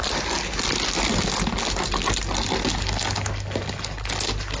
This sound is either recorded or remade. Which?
recorded